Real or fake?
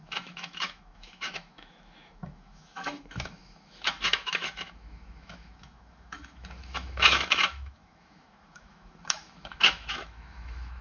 fake